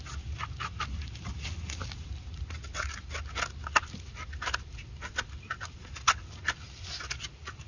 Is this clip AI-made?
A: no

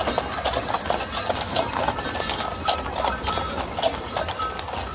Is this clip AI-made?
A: no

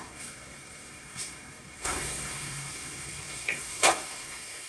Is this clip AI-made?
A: yes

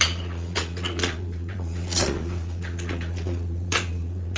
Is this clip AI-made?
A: yes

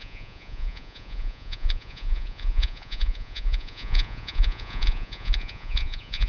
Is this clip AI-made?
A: yes